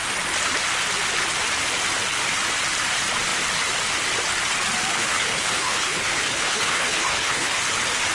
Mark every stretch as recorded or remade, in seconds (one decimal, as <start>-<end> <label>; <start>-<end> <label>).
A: 0.0-4.9 recorded; 4.9-7.6 remade; 7.6-8.1 recorded